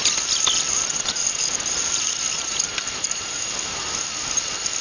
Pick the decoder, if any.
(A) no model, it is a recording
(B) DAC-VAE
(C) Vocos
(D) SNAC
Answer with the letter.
A